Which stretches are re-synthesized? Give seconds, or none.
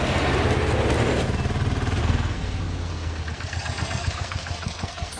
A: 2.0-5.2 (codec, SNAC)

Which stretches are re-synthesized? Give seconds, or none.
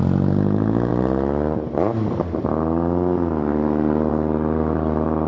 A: none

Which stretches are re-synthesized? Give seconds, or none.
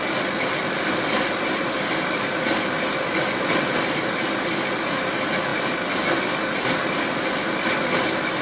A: none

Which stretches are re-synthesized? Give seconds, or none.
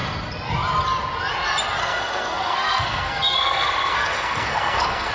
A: 1.8-5.1 (codec, SNAC)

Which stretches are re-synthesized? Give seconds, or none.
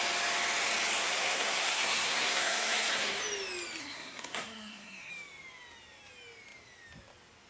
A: 1.0-3.2 (codec, SNAC); 3.8-5.1